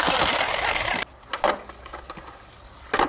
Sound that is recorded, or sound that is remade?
recorded